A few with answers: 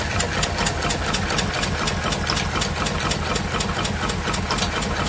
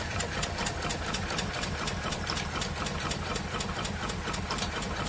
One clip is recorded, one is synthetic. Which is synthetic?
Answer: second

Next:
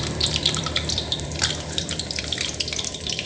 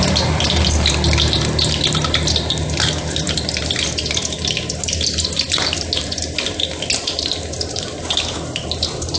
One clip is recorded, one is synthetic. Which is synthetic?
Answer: first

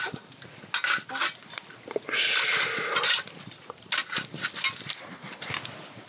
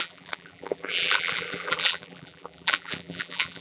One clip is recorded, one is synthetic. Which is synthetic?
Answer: second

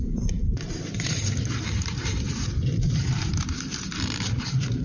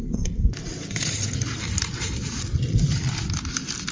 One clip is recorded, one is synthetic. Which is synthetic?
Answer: first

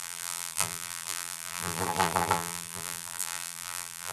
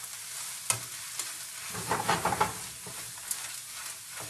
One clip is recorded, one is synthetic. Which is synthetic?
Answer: first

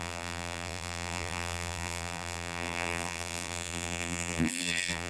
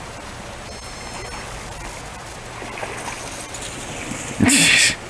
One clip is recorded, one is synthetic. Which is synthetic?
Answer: first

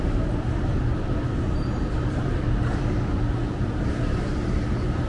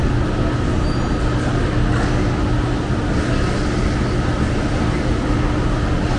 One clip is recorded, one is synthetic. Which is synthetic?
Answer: first